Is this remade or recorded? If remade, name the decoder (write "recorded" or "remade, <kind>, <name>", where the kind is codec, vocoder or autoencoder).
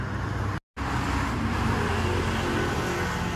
recorded